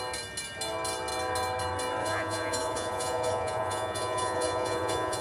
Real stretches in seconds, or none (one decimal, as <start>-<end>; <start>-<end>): 0.0-2.0